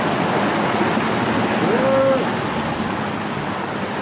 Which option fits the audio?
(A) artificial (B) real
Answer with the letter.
B